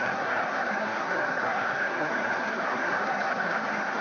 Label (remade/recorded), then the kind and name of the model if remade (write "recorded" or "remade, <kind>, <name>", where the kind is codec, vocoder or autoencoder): remade, codec, SNAC